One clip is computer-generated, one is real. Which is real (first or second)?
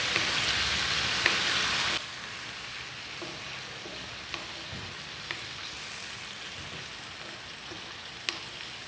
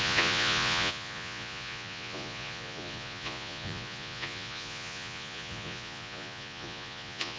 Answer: first